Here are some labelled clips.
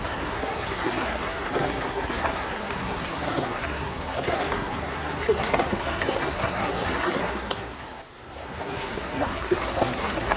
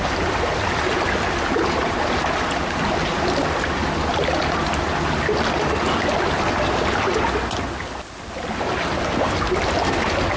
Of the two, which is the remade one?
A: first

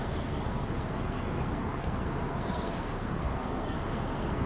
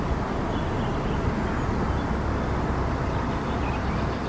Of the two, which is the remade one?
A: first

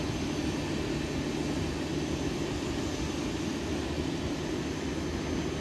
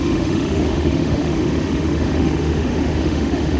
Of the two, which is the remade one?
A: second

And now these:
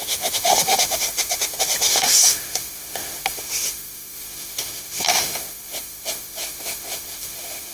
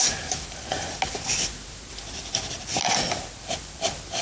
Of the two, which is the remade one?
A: first